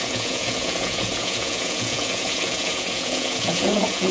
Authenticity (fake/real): fake